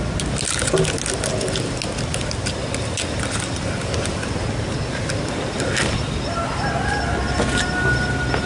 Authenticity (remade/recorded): recorded